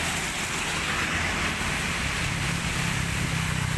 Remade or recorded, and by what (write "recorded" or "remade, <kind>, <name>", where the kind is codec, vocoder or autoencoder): recorded